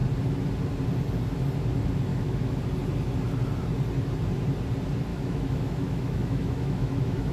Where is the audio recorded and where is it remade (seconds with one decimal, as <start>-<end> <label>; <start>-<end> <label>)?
0.0-2.1 recorded; 2.1-2.6 remade; 2.6-5.1 recorded; 5.1-7.3 remade